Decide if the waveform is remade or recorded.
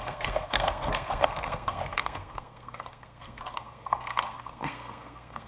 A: remade